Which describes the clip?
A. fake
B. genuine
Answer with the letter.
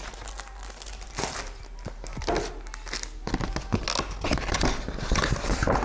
B